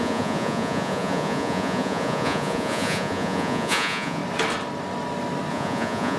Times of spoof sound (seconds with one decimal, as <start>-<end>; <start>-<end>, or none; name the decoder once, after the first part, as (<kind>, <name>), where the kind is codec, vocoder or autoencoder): 0.0-4.2 (vocoder, Vocos); 5.5-6.2